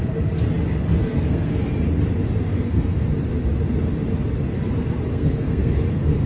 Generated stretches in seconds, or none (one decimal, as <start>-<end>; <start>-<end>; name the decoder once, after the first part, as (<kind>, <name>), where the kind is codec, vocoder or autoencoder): 1.0-1.6 (codec, SNAC); 2.5-3.1; 5.1-6.3